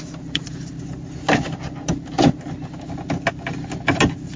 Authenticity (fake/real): real